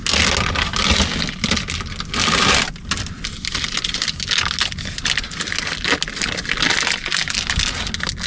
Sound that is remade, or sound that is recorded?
recorded